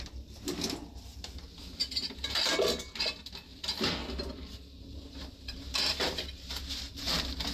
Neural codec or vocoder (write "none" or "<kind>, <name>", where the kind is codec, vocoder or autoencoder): none